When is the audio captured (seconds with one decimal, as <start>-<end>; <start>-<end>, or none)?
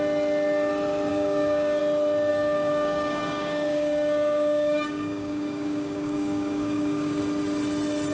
0.0-1.1; 1.8-2.3; 7.2-8.1